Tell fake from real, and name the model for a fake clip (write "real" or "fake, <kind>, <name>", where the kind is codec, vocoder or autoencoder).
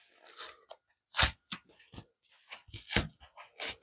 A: real